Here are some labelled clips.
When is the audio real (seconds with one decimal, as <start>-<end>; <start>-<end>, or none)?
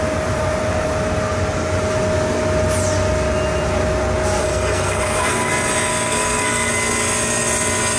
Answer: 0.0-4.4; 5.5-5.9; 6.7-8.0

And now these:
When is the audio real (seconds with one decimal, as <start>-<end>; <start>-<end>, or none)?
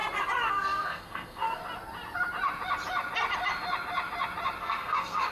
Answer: 0.0-0.5; 1.6-4.6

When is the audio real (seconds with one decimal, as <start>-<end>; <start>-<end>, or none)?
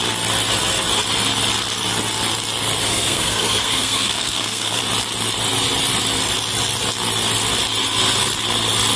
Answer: 0.0-2.9; 4.8-9.0